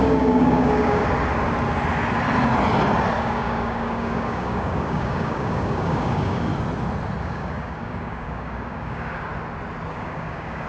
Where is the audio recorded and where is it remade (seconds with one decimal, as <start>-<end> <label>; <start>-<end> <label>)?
0.0-1.0 remade; 1.0-3.2 recorded; 3.2-6.5 remade; 6.5-7.2 recorded; 7.2-9.3 remade; 9.3-9.9 recorded; 9.9-10.7 remade